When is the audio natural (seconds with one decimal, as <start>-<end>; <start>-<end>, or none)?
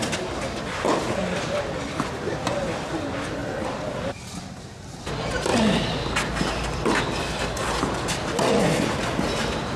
0.0-9.8